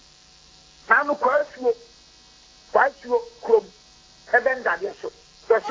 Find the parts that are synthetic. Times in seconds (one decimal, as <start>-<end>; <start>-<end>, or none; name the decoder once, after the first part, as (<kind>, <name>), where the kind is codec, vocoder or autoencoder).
0.0-1.4 (codec, DAC); 4.8-5.7